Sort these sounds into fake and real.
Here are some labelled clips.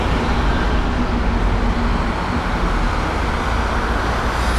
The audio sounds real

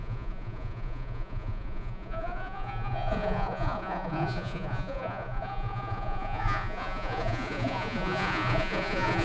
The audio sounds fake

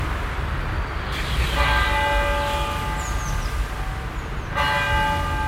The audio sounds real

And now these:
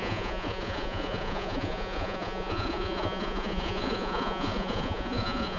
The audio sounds fake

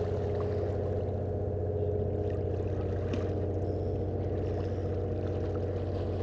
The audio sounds real